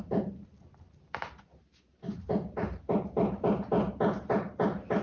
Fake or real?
real